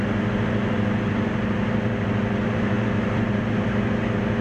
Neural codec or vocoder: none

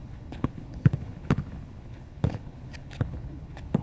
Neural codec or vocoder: codec, HILCodec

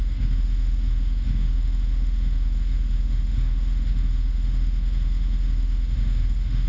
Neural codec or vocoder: autoencoder, DAC-VAE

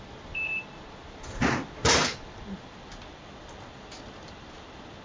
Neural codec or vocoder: none